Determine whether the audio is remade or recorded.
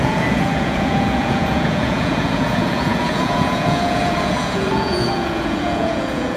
remade